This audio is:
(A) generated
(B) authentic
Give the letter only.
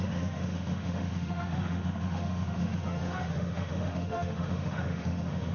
A